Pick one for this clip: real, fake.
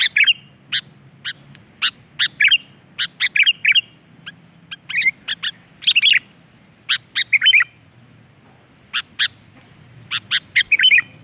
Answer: real